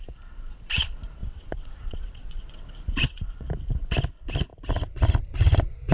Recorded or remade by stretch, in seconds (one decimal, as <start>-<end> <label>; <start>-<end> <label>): 0.0-1.2 recorded; 1.2-3.5 remade; 3.5-5.9 recorded